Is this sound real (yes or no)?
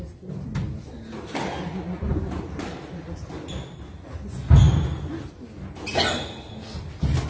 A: yes